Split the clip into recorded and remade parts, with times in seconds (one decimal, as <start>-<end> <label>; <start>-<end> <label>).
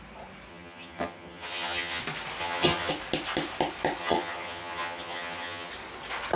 0.0-0.5 recorded; 0.5-2.0 remade; 2.0-2.4 recorded; 2.4-2.9 remade; 2.9-4.0 recorded; 4.0-5.7 remade; 5.7-6.4 recorded